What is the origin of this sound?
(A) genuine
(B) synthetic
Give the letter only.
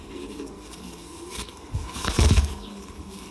B